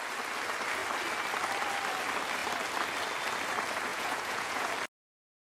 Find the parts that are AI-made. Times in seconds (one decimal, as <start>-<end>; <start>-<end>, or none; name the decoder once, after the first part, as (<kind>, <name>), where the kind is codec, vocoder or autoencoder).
3.9-4.7 (vocoder, Vocos)